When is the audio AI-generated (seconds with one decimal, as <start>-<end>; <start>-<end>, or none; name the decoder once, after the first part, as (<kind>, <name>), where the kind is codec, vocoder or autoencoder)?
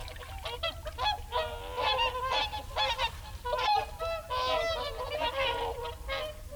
none